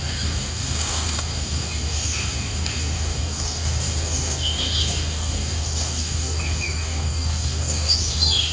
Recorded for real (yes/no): no